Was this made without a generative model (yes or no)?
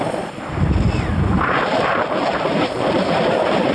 yes